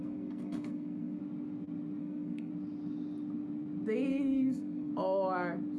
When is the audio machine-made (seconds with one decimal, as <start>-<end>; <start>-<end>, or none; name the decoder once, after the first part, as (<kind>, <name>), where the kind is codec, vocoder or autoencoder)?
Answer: 0.0-1.2 (codec, SNAC); 2.0-2.5; 4.1-4.9